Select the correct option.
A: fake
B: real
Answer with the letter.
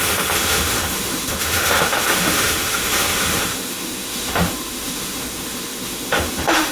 A